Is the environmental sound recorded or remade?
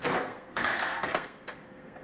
remade